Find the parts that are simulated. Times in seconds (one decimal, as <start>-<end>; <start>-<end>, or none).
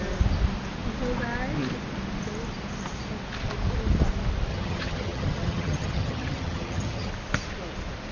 4.5-7.1